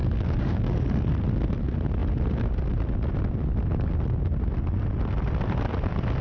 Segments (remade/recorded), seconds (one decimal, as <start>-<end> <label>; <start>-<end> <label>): 0.0-1.1 remade; 1.1-6.2 recorded